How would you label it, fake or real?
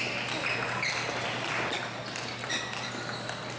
real